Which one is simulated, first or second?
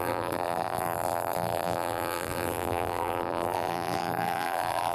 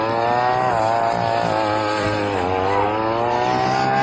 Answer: first